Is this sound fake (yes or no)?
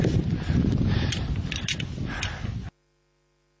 no